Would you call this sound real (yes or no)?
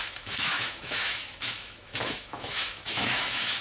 no